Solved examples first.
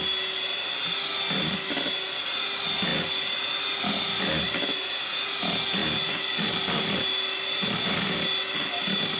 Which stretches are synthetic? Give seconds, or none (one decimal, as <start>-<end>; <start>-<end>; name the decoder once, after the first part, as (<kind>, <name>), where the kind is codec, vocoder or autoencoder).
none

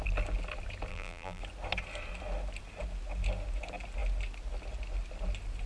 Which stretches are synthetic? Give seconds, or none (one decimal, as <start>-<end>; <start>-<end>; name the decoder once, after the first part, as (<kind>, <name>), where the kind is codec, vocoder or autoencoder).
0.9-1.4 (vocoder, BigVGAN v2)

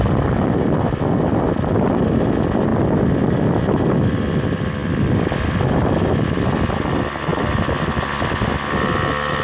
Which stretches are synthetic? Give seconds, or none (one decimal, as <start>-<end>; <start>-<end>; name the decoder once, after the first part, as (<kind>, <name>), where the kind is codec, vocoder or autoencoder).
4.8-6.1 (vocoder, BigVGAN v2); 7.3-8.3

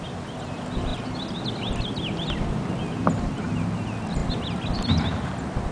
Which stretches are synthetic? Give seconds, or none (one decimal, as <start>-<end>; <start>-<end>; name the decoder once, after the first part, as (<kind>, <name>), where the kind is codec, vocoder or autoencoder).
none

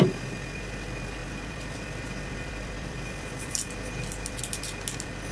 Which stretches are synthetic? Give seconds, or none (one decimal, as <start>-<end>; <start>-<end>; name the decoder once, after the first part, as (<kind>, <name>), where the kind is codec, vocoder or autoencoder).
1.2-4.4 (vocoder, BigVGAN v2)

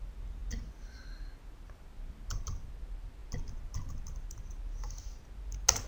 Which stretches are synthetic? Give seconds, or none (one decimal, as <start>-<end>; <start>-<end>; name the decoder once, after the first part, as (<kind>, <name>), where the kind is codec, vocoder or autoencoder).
none